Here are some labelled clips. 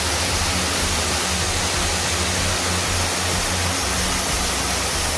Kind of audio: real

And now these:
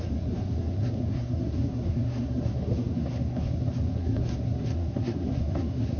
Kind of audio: fake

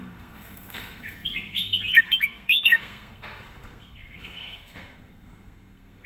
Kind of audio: fake